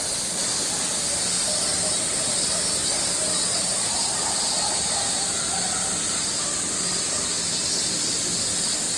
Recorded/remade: recorded